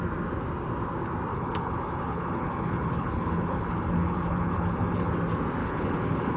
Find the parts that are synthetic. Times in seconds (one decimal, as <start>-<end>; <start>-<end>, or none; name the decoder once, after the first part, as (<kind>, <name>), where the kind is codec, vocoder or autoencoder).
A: 1.3-5.1 (codec, HILCodec); 5.6-6.4